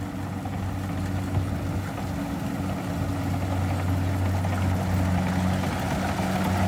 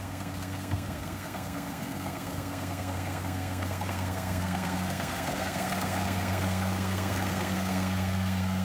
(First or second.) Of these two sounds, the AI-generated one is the second